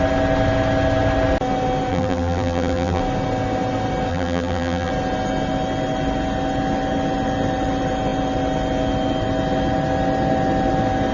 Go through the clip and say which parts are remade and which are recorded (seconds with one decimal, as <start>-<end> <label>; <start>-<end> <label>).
0.0-1.9 recorded; 1.9-3.0 remade; 3.0-4.1 recorded; 4.1-4.9 remade; 4.9-11.1 recorded